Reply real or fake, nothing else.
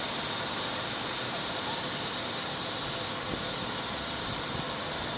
real